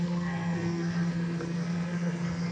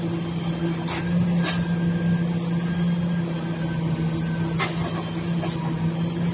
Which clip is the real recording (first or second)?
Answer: second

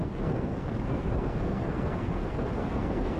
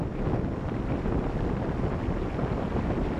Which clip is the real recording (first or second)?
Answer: second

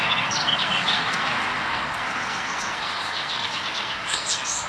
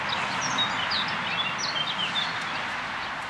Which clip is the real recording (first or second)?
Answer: second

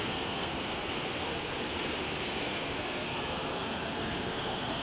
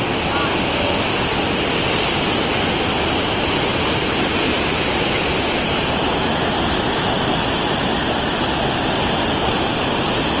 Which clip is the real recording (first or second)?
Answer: second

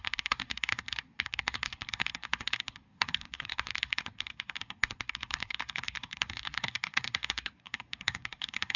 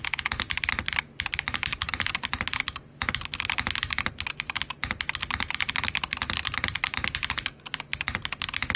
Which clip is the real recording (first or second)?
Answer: second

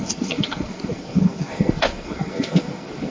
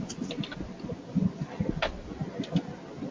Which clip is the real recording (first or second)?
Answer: second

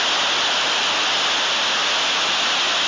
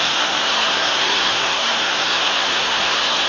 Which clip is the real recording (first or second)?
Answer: first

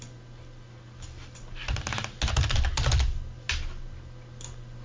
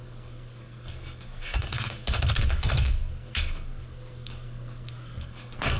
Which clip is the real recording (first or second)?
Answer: first